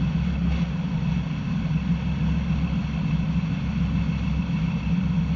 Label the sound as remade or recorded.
recorded